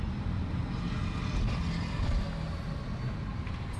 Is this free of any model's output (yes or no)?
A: yes